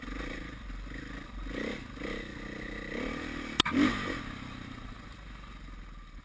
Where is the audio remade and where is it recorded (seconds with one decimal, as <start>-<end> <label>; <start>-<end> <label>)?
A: 0.0-6.2 recorded